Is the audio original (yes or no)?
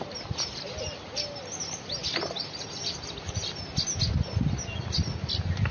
yes